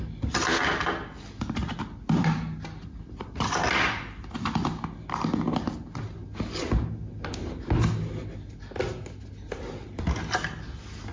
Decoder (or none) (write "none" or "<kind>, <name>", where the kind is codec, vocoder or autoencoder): none